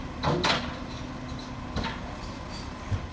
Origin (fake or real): real